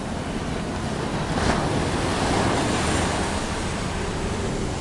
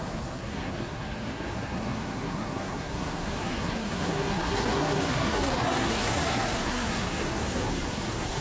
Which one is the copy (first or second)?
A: second